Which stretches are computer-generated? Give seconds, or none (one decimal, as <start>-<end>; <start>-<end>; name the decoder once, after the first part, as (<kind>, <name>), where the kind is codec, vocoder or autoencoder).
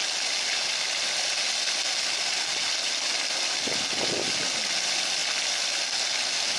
none